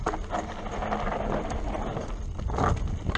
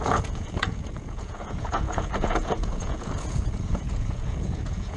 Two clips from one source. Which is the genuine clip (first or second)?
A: first